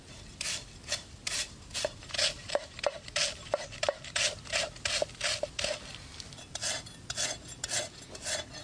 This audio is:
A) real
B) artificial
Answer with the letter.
A